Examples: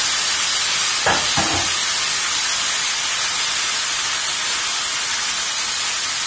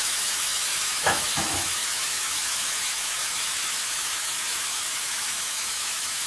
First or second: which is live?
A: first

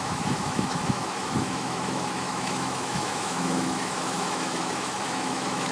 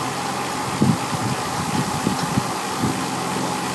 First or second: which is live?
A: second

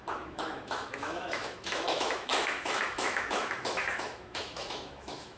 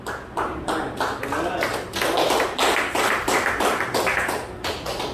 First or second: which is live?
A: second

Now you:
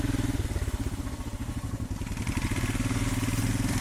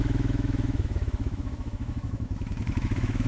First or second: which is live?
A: first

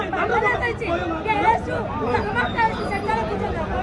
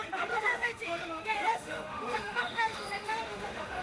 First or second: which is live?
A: first